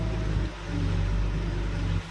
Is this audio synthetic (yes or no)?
no